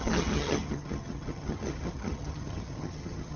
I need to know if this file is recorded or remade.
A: remade